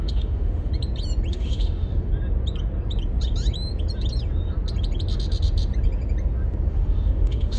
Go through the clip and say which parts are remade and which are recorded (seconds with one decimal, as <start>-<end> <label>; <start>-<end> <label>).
0.0-0.7 remade; 0.7-1.3 recorded; 1.3-2.1 remade; 2.1-6.7 recorded; 6.7-7.6 remade